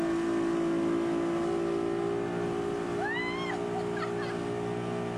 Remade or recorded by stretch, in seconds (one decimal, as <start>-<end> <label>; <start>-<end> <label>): 0.0-5.2 recorded